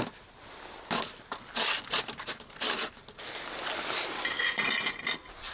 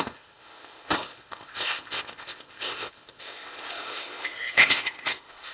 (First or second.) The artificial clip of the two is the second